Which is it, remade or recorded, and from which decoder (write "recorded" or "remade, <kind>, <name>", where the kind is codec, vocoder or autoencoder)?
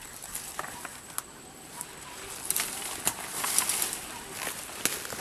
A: recorded